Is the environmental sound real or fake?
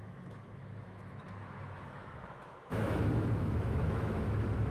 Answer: fake